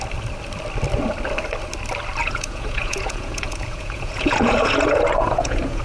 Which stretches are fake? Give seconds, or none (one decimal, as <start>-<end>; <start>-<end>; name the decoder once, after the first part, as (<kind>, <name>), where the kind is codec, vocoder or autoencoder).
2.2-5.8 (vocoder, Vocos)